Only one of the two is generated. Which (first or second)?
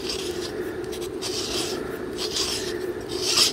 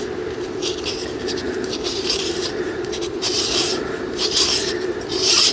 second